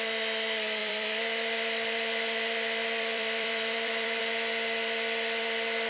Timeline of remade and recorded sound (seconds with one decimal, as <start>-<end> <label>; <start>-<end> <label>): 0.0-0.8 recorded; 0.8-4.2 remade; 4.2-5.9 recorded